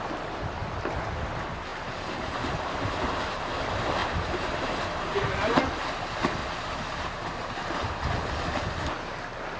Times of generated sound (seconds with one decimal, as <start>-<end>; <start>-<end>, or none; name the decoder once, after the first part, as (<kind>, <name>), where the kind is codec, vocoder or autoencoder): 1.7-3.2 (vocoder, BigVGAN v2); 4.0-5.6; 6.4-8.1